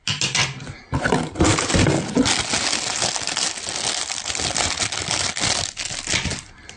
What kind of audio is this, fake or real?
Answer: real